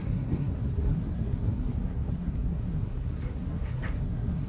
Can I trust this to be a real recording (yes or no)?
no